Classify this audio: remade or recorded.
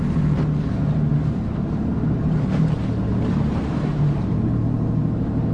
recorded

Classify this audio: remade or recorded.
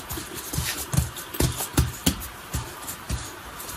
recorded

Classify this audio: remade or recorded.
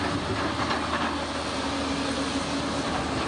recorded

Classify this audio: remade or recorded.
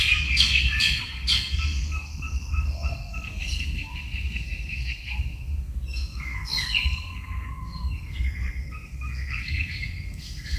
remade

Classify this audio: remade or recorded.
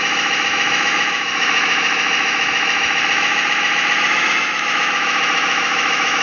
remade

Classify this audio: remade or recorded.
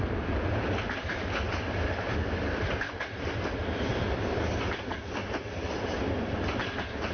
recorded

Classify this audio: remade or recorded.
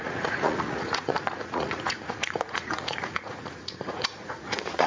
remade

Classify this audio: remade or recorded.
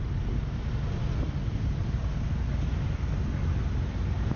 recorded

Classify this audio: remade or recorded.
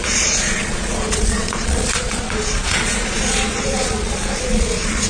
remade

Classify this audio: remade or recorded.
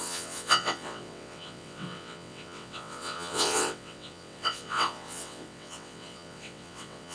remade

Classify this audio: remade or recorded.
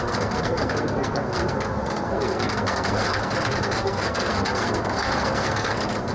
remade